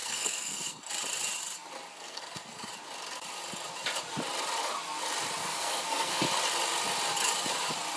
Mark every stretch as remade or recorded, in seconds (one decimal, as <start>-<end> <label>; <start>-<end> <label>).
0.0-0.9 remade; 0.9-1.9 recorded; 1.9-2.7 remade; 2.7-5.4 recorded; 5.4-6.3 remade; 6.3-8.0 recorded

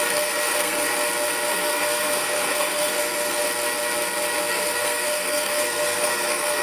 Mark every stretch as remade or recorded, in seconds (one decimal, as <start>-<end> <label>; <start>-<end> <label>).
0.0-0.9 remade; 0.9-1.5 recorded; 1.5-3.4 remade; 3.4-4.5 recorded; 4.5-6.6 remade

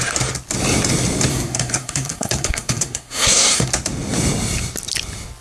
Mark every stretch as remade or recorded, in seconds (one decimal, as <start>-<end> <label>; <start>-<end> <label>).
0.0-1.3 recorded; 1.3-3.7 remade; 3.7-5.4 recorded

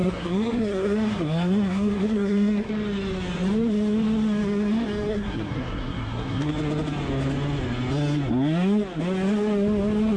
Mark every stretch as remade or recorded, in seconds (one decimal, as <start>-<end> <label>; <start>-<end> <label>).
0.0-2.7 remade; 2.7-5.1 recorded; 5.1-6.5 remade; 6.5-10.2 recorded

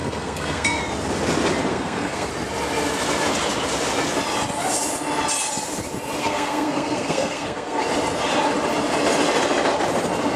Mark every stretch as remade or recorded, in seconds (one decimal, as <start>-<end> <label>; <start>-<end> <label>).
0.0-0.8 remade; 0.8-1.7 recorded; 1.7-2.3 remade; 2.3-6.2 recorded; 6.2-7.8 remade; 7.8-10.4 recorded

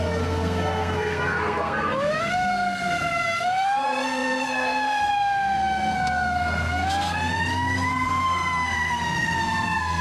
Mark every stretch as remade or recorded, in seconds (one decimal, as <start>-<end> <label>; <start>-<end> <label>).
0.0-10.0 remade

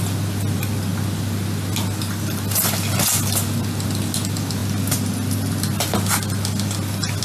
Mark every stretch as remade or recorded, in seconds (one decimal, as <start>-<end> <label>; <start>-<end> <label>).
0.0-7.2 recorded

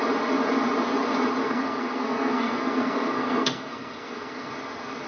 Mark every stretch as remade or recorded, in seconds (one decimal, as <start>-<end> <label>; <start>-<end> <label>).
0.0-1.4 recorded; 1.4-4.5 remade; 4.5-5.1 recorded